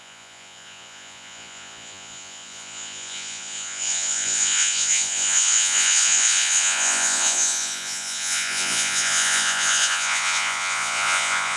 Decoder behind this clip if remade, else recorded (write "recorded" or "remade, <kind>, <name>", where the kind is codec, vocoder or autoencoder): remade, vocoder, Vocos